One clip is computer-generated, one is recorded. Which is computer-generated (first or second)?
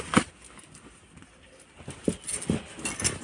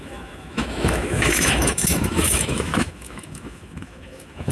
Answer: second